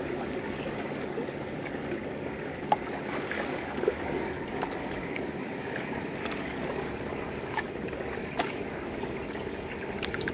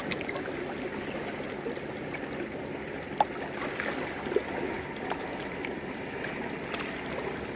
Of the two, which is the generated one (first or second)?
first